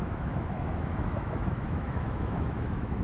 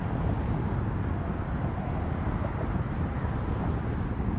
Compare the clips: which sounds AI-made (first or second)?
first